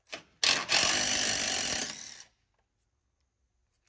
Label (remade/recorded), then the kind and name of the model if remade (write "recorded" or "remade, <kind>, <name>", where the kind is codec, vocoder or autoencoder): recorded